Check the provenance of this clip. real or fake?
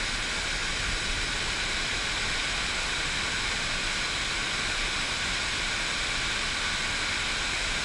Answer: real